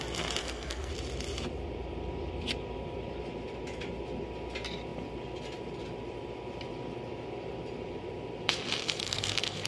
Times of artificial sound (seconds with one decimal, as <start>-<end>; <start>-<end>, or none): 0.4-0.9; 8.8-9.7